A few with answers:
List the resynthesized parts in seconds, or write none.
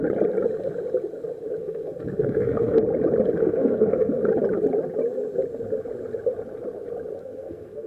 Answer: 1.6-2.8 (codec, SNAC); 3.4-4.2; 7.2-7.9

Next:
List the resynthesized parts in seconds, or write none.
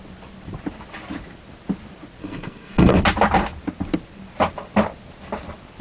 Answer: 2.2-3.0 (codec, SNAC)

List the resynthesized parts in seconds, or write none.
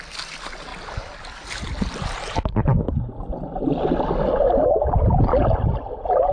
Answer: none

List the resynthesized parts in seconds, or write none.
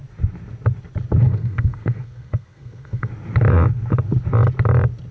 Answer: 1.2-3.1 (codec, SNAC)